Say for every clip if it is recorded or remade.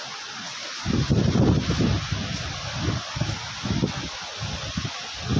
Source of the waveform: recorded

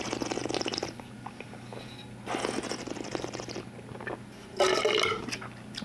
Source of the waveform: recorded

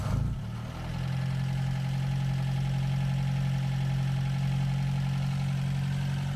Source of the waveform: recorded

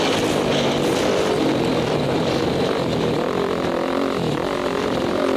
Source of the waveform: recorded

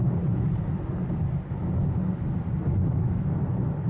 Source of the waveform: recorded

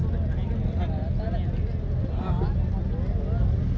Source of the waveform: recorded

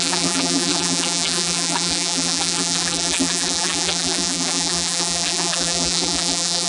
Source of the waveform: remade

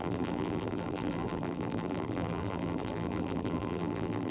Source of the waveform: remade